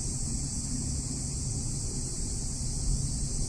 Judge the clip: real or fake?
real